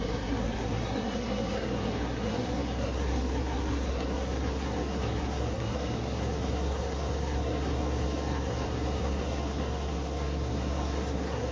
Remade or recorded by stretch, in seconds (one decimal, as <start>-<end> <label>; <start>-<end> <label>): 0.0-11.5 remade